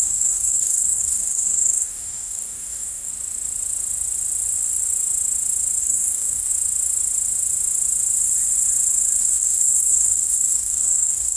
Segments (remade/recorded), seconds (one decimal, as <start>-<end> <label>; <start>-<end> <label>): 0.0-3.1 remade; 3.1-5.8 recorded; 5.8-6.5 remade; 6.5-9.2 recorded; 9.2-11.4 remade